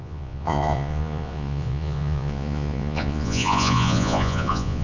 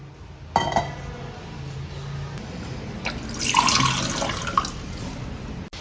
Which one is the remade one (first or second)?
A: first